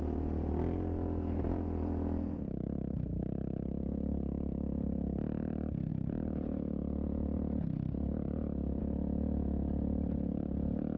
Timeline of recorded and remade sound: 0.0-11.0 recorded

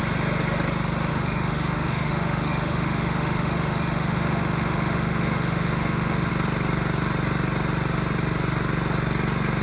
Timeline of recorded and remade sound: 0.0-1.1 recorded; 1.1-6.3 remade; 6.3-9.6 recorded